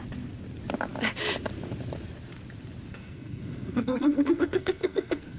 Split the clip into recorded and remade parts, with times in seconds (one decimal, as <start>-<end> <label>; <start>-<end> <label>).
0.0-2.9 recorded; 2.9-5.4 remade